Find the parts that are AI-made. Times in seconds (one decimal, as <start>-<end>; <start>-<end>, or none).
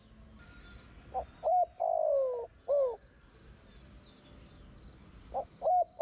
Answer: none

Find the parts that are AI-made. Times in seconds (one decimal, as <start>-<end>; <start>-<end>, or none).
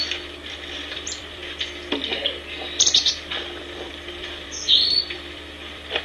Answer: 0.0-1.4; 3.4-6.0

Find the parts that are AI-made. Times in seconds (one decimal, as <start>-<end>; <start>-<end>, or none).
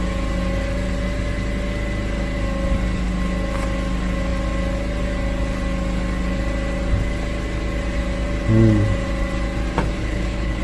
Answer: 10.0-10.6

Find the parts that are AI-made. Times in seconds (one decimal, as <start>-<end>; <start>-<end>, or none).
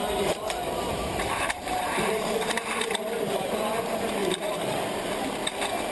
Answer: 0.0-2.8; 4.2-5.3